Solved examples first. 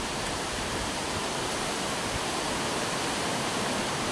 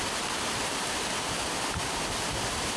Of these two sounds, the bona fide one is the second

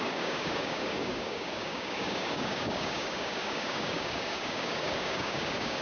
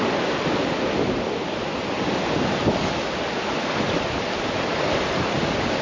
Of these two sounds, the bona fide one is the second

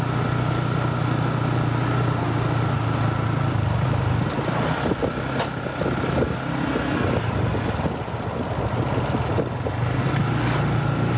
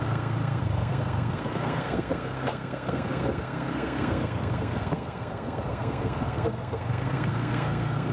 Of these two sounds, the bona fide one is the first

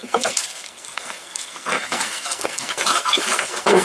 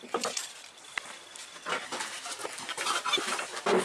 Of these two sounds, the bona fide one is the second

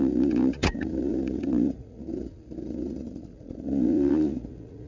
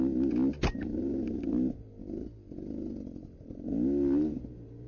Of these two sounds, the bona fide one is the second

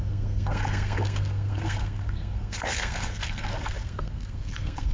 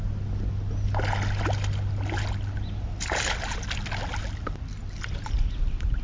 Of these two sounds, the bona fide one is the second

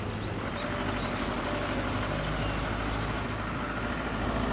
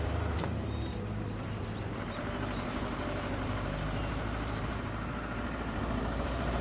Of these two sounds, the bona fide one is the first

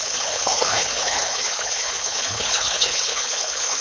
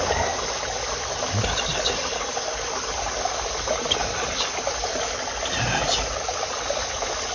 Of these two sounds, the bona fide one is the second